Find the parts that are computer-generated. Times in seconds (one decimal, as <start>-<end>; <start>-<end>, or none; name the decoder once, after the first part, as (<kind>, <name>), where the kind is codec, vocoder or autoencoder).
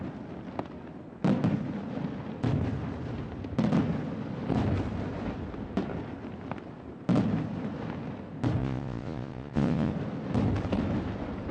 8.6-9.9 (vocoder, Vocos)